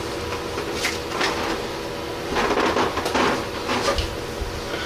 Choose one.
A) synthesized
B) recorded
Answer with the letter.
B